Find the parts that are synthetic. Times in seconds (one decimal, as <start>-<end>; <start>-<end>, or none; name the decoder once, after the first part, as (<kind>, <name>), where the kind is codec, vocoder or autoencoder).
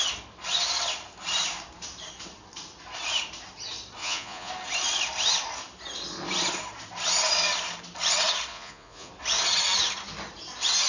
4.0-4.5 (vocoder, Vocos); 8.5-9.1